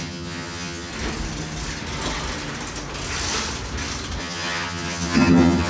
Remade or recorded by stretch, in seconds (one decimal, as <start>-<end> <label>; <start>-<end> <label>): 0.0-0.9 remade; 0.9-4.2 recorded; 4.2-5.7 remade